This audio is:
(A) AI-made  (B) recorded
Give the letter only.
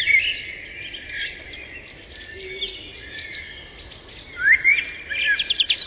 B